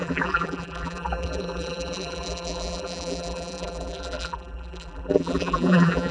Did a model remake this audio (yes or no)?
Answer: yes